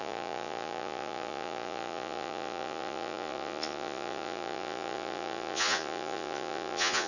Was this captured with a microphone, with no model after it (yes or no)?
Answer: no